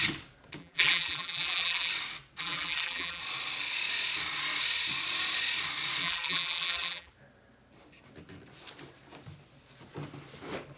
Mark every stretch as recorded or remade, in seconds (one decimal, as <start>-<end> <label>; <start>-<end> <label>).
0.0-0.6 recorded; 0.6-1.9 remade; 1.9-2.4 recorded; 2.4-3.2 remade; 3.2-6.0 recorded; 6.0-7.1 remade; 7.1-10.8 recorded